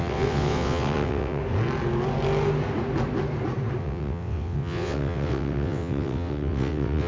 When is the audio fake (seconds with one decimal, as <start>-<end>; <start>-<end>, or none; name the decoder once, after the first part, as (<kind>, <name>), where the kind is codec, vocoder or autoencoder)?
0.0-1.4 (vocoder, WaveNeXt); 3.8-7.1